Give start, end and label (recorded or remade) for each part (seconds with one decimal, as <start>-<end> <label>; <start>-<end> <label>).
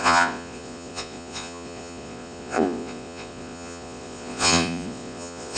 0.0-5.6 remade